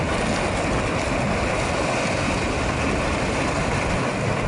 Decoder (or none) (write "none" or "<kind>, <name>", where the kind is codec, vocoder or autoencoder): none